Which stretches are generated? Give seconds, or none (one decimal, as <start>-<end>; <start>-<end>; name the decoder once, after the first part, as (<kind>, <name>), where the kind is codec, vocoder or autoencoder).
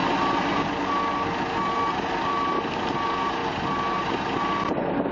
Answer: none